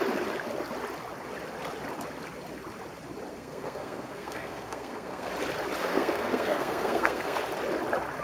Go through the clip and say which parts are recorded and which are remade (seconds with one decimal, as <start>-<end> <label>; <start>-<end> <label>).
0.0-3.3 recorded; 3.3-5.3 remade; 5.3-5.8 recorded; 5.8-7.4 remade; 7.4-8.2 recorded

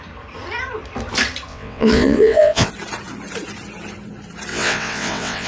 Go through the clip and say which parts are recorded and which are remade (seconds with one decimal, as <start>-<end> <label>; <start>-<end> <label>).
0.0-1.5 recorded; 1.5-2.7 remade; 2.7-4.5 recorded; 4.5-5.5 remade

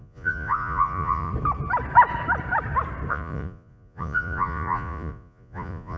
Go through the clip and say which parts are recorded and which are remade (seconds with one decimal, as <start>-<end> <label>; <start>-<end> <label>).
0.0-1.3 remade; 1.3-3.1 recorded; 3.1-6.0 remade

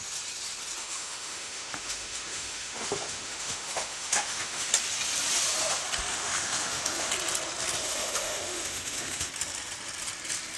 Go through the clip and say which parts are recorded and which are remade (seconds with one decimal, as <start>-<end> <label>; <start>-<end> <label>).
0.0-0.8 recorded; 0.8-4.7 remade; 4.7-6.1 recorded; 6.1-7.1 remade; 7.1-7.8 recorded; 7.8-9.3 remade; 9.3-10.6 recorded

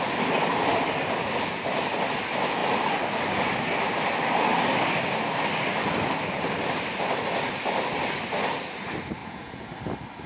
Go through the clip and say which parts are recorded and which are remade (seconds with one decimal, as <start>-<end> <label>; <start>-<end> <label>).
0.0-9.2 recorded; 9.2-9.7 remade; 9.7-10.3 recorded

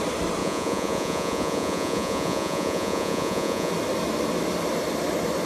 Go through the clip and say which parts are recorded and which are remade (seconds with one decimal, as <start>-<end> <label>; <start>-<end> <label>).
0.0-0.4 recorded; 0.4-3.7 remade; 3.7-5.5 recorded

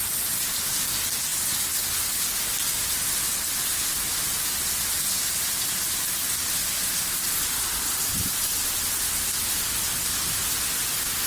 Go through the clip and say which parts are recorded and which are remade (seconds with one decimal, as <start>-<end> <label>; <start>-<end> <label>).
0.0-11.3 recorded

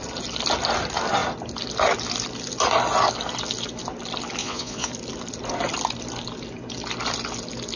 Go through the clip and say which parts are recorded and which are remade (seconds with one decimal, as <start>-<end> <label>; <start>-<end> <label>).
0.0-4.4 recorded; 4.4-4.9 remade; 4.9-7.8 recorded